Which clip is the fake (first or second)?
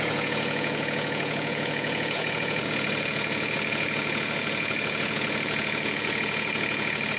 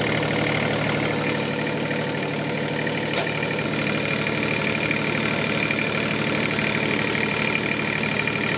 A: first